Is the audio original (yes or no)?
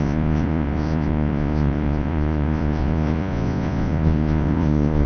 no